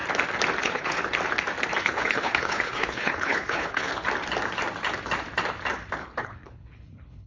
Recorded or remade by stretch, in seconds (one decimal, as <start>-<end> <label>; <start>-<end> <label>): 0.0-0.6 recorded; 0.6-1.0 remade; 1.0-1.8 recorded; 1.8-3.9 remade; 3.9-6.0 recorded; 6.0-7.3 remade